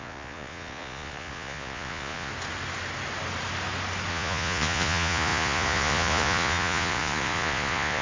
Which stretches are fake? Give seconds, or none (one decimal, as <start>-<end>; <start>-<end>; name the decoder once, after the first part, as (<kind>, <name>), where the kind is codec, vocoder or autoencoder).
0.0-2.3 (vocoder, Vocos); 4.1-8.0